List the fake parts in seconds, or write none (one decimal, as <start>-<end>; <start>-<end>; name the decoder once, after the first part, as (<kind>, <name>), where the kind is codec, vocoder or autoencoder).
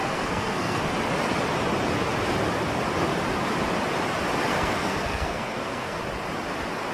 0.0-0.8 (codec, SNAC); 4.5-6.0